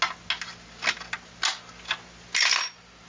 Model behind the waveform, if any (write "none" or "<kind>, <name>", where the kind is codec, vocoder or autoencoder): none